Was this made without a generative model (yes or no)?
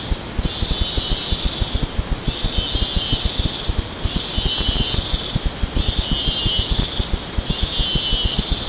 yes